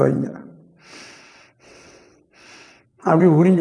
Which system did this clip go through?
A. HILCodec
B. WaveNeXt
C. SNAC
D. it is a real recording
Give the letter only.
B